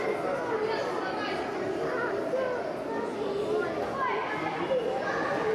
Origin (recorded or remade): recorded